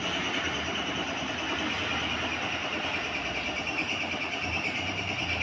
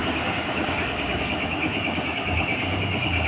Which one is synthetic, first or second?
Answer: second